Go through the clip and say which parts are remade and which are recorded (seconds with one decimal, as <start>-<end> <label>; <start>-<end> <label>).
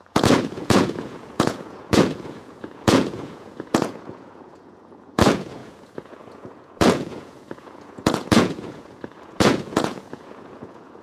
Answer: 0.0-11.0 remade